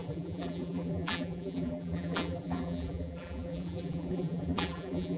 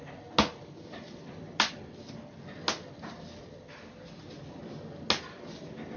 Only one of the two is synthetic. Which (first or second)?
first